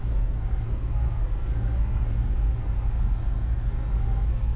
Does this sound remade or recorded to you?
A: remade